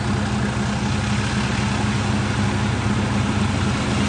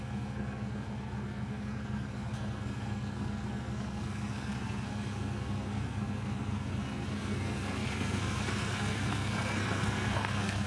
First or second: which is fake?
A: second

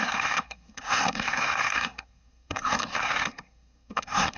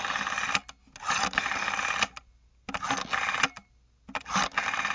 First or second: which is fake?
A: first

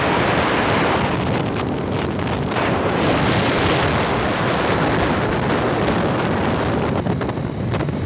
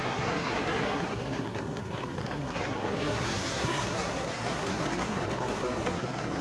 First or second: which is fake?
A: second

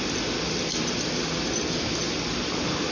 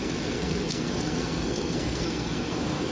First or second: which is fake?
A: second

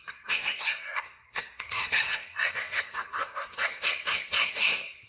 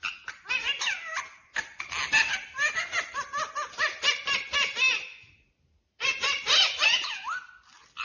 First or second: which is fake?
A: first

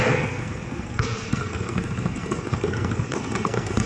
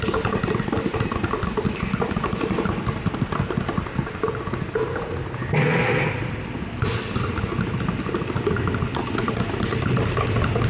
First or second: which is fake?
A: first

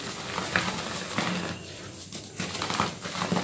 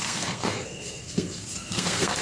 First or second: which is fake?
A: second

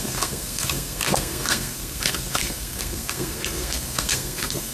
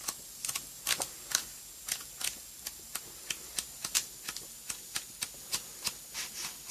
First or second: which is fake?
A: first